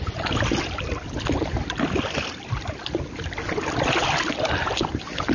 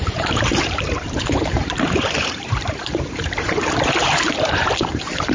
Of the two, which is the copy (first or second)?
second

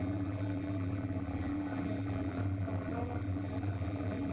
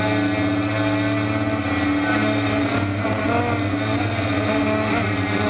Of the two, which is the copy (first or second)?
first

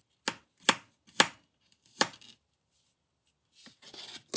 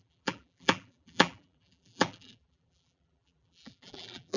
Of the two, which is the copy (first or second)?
second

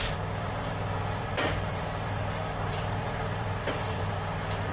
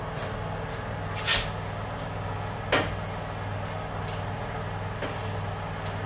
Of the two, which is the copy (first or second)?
first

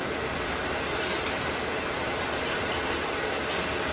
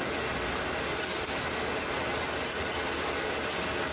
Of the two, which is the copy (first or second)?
first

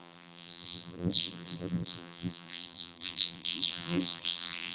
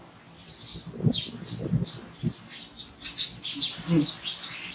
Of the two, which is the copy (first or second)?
first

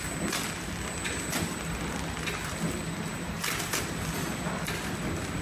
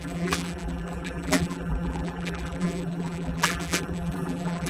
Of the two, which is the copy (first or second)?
second